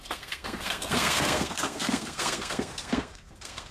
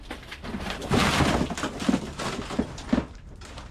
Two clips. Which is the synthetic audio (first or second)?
first